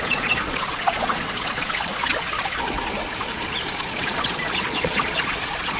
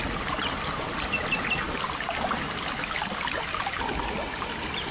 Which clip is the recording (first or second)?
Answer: second